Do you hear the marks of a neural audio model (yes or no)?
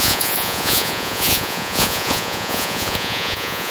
yes